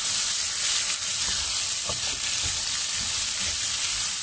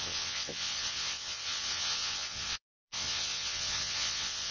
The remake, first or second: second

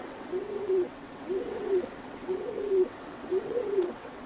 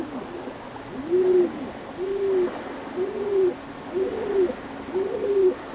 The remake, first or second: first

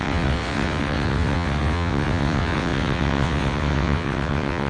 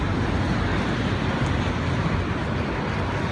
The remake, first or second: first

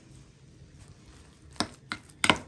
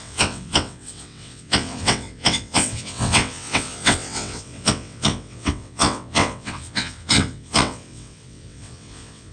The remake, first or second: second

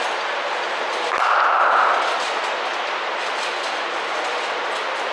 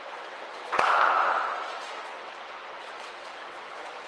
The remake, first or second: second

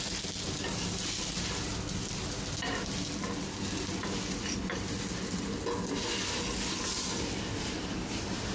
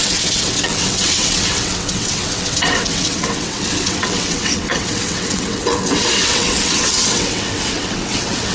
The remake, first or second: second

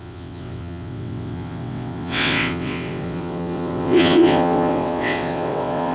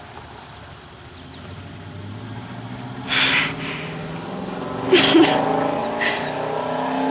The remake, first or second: first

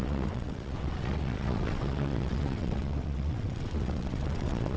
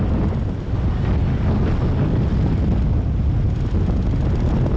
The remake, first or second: first